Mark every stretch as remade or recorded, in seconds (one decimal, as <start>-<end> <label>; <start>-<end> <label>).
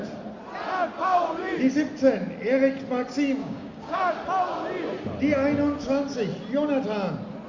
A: 0.0-3.4 recorded; 3.4-4.0 remade; 4.0-7.5 recorded